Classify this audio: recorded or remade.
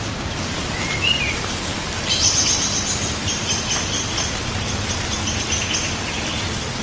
recorded